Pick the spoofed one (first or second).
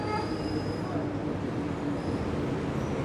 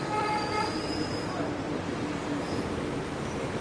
second